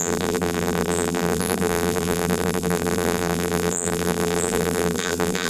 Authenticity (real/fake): fake